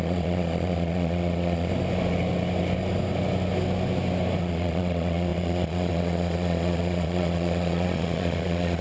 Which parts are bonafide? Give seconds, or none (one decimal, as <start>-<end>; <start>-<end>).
1.7-4.4